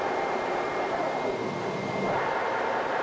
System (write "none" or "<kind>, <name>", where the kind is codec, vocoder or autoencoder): vocoder, BigVGAN v2